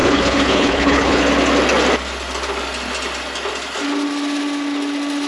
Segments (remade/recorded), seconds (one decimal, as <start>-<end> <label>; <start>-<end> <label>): 0.0-1.2 remade; 1.2-5.3 recorded